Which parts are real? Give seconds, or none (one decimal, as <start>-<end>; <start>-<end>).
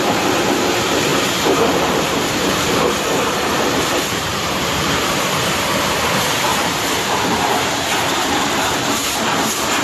none